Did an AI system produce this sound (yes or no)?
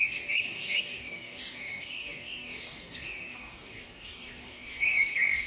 yes